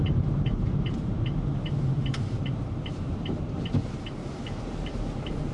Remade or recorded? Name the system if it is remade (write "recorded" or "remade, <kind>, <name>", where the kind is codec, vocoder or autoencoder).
remade, vocoder, BigVGAN v2